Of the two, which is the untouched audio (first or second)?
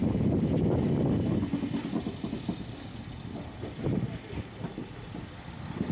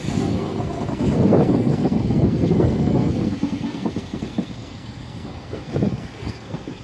first